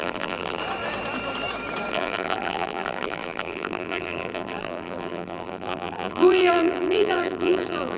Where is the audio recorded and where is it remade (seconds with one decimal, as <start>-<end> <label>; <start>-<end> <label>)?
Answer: 0.0-0.6 remade; 0.6-1.9 recorded; 1.9-8.0 remade